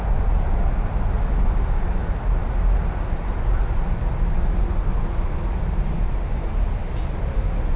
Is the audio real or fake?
real